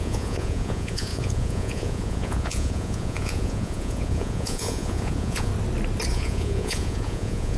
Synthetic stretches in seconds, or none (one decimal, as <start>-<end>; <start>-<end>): 0.0-5.5; 6.1-7.6